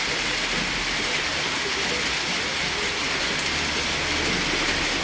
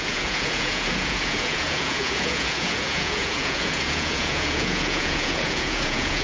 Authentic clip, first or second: first